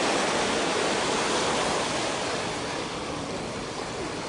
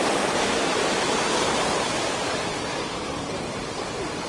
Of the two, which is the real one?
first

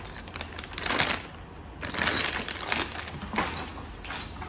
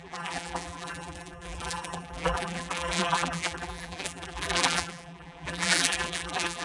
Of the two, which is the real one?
first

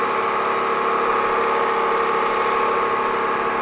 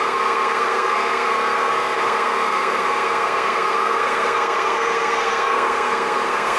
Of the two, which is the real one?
first